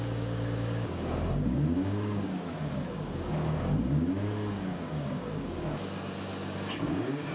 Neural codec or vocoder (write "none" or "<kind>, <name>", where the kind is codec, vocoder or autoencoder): codec, DAC